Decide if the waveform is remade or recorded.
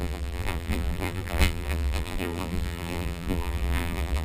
remade